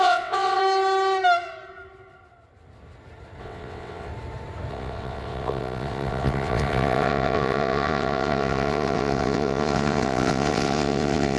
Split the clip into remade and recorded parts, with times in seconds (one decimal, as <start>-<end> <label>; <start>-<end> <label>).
0.0-0.6 remade; 0.6-3.4 recorded; 3.4-4.1 remade; 4.1-4.7 recorded; 4.7-11.4 remade

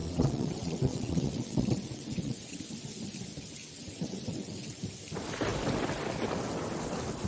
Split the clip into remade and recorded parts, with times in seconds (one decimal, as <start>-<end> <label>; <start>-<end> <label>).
0.0-2.6 remade; 2.6-3.6 recorded; 3.6-4.8 remade; 4.8-7.3 recorded